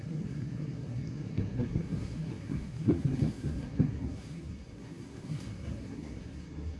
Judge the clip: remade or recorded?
remade